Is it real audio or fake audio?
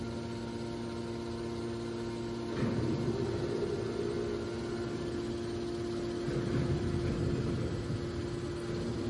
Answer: real